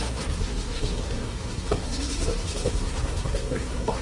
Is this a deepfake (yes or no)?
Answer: yes